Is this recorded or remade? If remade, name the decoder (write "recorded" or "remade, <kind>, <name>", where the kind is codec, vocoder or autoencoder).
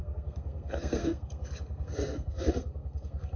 remade, codec, SNAC